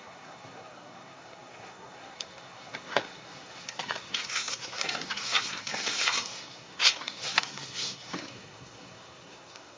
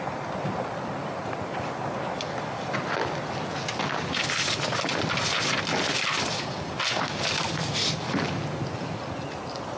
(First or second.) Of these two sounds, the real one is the second